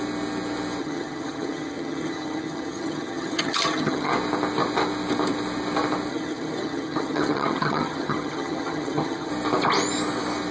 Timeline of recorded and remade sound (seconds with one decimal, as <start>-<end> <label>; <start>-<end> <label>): 0.0-0.8 recorded; 0.8-4.1 remade; 4.1-6.1 recorded; 6.1-9.3 remade; 9.3-10.5 recorded